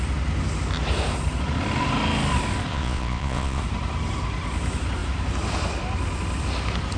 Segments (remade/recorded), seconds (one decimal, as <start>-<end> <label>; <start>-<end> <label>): 0.0-2.7 recorded; 2.7-3.6 remade; 3.6-7.0 recorded